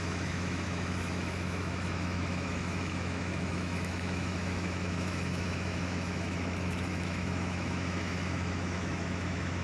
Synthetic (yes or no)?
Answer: yes